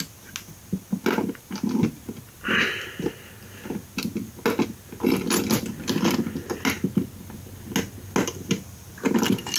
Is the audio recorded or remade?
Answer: recorded